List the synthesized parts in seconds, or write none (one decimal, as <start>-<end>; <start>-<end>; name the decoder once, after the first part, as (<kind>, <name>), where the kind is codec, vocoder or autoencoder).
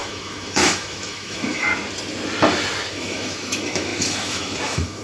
0.0-1.7 (autoencoder, DAC-VAE); 2.9-5.0